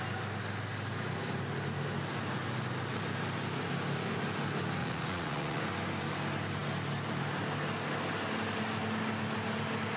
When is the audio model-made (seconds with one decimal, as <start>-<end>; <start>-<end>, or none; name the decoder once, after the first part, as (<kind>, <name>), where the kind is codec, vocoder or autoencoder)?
4.8-5.6 (vocoder, Vocos)